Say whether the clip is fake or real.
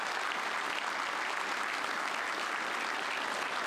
real